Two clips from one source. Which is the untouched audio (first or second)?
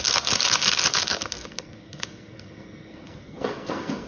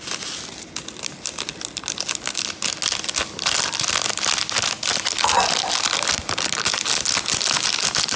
second